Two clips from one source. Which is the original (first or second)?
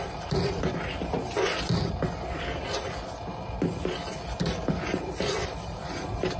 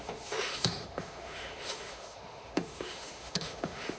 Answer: first